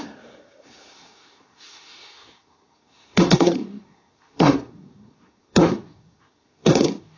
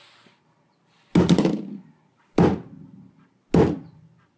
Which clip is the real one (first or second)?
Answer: second